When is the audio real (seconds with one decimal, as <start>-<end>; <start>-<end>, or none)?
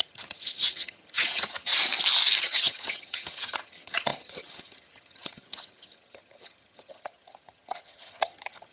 1.7-2.4